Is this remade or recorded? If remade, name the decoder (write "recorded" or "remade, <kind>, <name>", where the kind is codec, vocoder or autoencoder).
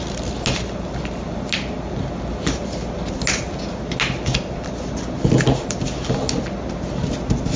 recorded